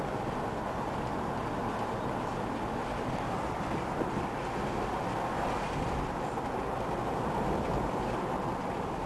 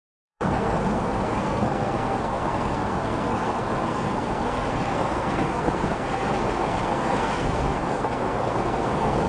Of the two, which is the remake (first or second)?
second